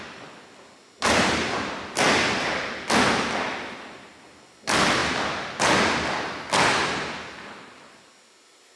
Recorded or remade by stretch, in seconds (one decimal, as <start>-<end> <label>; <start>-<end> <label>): 0.0-8.8 recorded